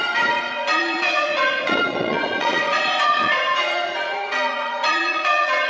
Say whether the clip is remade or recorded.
remade